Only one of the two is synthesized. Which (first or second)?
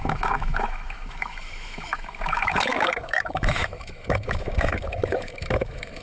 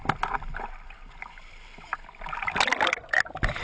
first